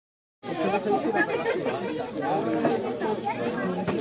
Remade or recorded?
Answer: recorded